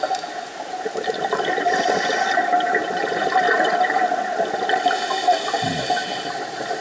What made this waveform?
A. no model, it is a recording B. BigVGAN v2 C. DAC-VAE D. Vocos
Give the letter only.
A